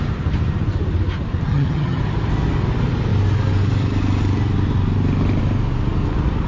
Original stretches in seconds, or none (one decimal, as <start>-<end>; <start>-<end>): 0.0-1.5; 2.0-6.5